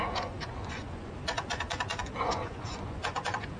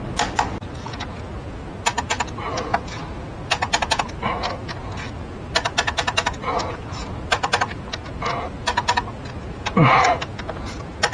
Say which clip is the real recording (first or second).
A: second